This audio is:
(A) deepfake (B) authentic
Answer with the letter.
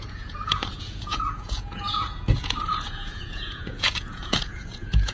A